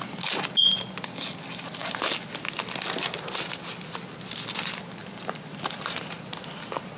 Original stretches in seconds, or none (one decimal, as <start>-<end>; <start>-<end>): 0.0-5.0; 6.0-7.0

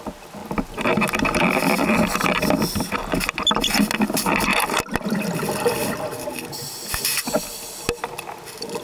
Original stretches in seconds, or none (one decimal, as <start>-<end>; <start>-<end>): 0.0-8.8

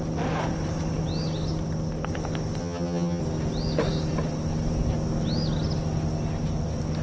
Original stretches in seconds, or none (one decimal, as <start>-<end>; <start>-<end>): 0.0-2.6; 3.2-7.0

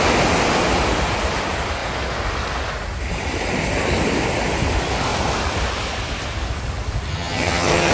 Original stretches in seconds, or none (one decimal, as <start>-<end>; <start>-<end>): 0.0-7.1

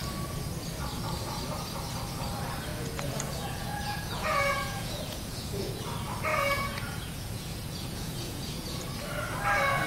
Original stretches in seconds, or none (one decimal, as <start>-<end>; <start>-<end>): 0.0-2.7; 5.8-6.3; 8.8-9.9